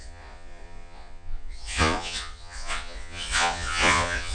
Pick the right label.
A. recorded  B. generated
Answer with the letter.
B